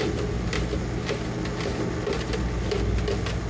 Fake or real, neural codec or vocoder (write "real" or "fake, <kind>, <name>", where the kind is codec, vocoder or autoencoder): real